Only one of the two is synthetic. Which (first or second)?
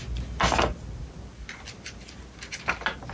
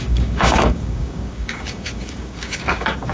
second